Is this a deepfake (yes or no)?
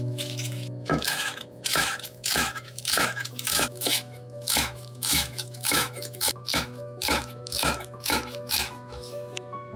yes